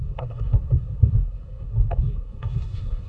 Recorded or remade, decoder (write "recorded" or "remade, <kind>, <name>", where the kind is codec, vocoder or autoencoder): remade, codec, SNAC